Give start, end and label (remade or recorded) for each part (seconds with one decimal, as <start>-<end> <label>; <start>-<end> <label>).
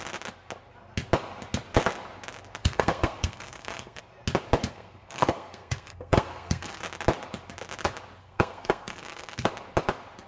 0.0-2.6 recorded; 2.6-4.0 remade; 4.0-4.7 recorded; 4.7-6.8 remade; 6.8-8.2 recorded; 8.2-9.5 remade; 9.5-10.3 recorded